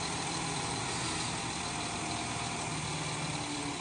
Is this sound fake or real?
real